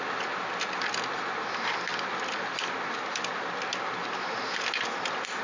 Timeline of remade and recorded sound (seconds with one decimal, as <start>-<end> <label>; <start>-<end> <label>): 0.0-5.4 recorded

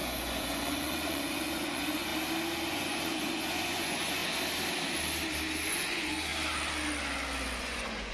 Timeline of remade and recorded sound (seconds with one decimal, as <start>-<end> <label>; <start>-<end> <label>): 0.0-2.1 remade; 2.1-2.7 recorded; 2.7-4.2 remade; 4.2-5.7 recorded; 5.7-6.3 remade; 6.3-7.6 recorded; 7.6-8.1 remade